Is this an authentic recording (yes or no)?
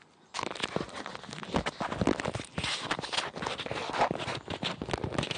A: yes